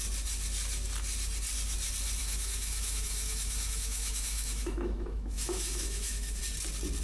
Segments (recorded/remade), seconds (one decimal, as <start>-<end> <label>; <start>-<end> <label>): 0.0-2.2 recorded; 2.2-6.4 remade; 6.4-7.0 recorded